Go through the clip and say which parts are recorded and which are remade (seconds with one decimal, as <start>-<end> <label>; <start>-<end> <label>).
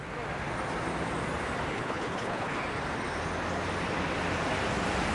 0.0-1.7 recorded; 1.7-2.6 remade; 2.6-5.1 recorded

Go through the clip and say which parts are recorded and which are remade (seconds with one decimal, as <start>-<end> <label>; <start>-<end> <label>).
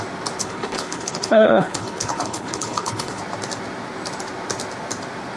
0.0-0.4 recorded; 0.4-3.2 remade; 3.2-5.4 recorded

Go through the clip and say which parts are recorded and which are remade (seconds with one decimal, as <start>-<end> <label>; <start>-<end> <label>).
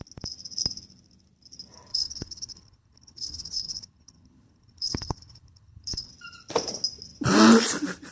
0.0-1.9 recorded; 1.9-6.1 remade; 6.1-8.1 recorded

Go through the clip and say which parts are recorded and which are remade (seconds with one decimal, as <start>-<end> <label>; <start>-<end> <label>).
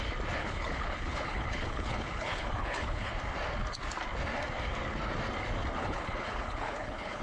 0.0-0.4 recorded; 0.4-3.1 remade; 3.1-5.8 recorded; 5.8-7.2 remade